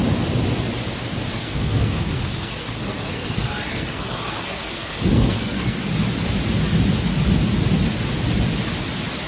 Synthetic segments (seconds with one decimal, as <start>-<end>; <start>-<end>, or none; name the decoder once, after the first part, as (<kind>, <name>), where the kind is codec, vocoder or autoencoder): 1.3-5.9 (codec, SNAC)